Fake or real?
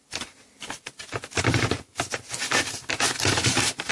real